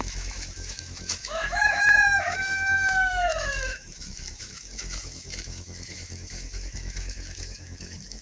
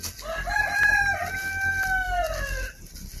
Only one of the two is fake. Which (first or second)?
first